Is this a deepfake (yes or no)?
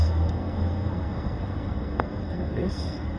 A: yes